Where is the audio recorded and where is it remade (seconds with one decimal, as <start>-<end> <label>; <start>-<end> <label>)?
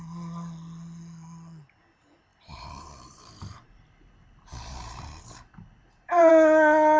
0.0-2.3 recorded; 2.3-6.3 remade; 6.3-7.0 recorded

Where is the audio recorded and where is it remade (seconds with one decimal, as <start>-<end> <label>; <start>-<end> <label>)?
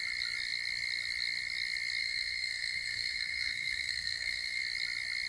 0.0-2.0 recorded; 2.0-4.6 remade; 4.6-5.3 recorded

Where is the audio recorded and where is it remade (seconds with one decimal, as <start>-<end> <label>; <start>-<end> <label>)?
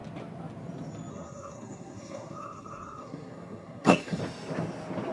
0.0-1.1 recorded; 1.1-4.2 remade; 4.2-5.1 recorded